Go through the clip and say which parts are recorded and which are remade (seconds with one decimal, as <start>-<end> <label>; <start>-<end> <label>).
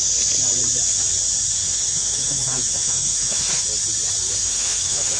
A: 0.0-1.6 recorded; 1.6-3.5 remade; 3.5-4.4 recorded; 4.4-5.2 remade